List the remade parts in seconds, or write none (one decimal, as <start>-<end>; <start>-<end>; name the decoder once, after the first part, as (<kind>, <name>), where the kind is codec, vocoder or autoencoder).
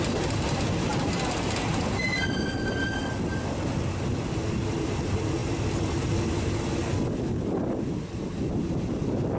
none